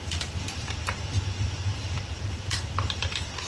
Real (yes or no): no